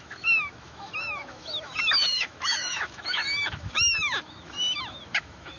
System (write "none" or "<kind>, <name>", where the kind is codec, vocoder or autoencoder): autoencoder, DAC-VAE